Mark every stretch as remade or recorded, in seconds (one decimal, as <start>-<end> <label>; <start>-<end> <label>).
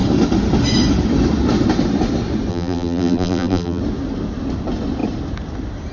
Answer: 0.0-2.5 recorded; 2.5-3.8 remade; 3.8-5.9 recorded